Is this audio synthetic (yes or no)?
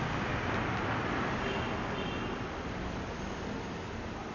no